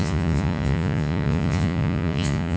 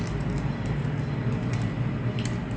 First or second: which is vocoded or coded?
first